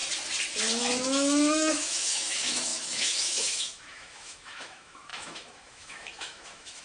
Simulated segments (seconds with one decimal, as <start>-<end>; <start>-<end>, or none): 0.8-6.8